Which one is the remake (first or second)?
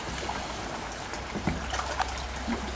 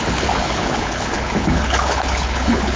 second